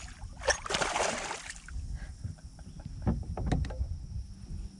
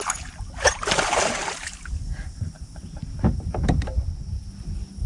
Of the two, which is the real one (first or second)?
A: first